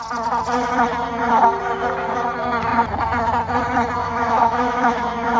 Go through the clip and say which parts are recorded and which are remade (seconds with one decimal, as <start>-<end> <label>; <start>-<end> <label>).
0.0-4.0 recorded; 4.0-5.4 remade